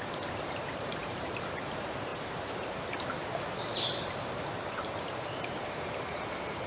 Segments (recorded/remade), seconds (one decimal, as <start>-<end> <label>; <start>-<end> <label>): 0.0-6.7 remade

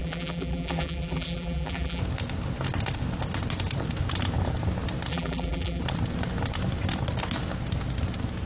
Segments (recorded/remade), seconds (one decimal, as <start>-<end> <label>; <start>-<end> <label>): 0.0-2.0 remade; 2.0-5.1 recorded; 5.1-5.8 remade; 5.8-8.5 recorded

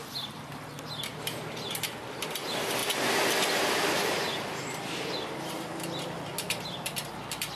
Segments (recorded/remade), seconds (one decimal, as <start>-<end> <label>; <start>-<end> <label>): 0.0-7.6 recorded

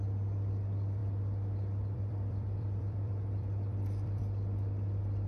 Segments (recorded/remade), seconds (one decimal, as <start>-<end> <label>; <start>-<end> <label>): 0.0-1.0 recorded; 1.0-4.2 remade; 4.2-5.3 recorded

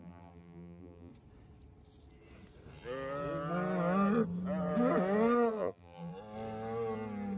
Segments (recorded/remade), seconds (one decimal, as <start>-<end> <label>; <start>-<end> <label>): 0.0-1.1 remade; 1.1-5.5 recorded; 5.5-6.1 remade; 6.1-7.4 recorded

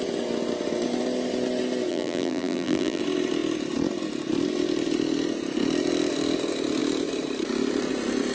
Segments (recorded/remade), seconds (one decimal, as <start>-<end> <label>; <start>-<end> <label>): 0.0-1.9 recorded; 1.9-3.0 remade; 3.0-8.3 recorded